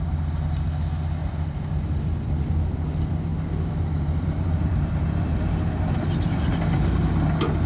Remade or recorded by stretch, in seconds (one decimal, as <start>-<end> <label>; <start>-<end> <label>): 0.0-1.2 recorded; 1.2-2.5 remade; 2.5-3.3 recorded; 3.3-5.2 remade; 5.2-7.7 recorded